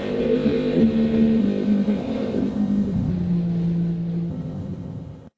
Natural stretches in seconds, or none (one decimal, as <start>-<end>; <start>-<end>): 0.8-1.4; 3.1-4.3